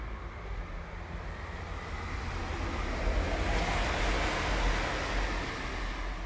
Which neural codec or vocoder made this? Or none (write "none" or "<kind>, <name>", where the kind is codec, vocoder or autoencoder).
none